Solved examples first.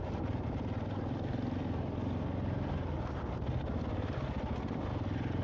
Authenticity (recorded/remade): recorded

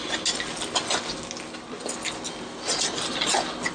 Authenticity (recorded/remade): recorded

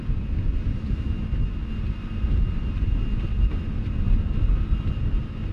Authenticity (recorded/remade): recorded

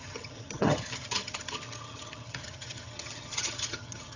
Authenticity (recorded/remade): remade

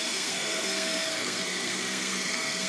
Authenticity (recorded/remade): remade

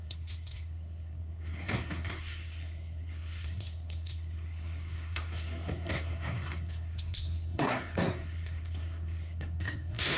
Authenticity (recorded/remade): remade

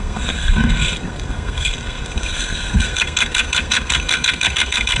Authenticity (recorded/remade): remade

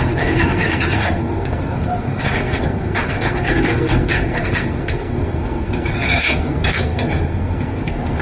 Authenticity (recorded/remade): remade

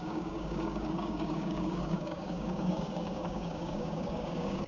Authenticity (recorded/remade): remade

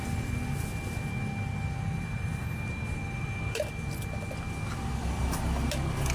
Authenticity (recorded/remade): recorded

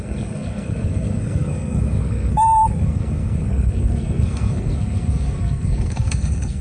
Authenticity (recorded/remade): remade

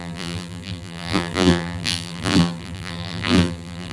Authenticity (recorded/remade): remade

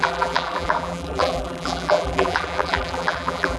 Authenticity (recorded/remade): remade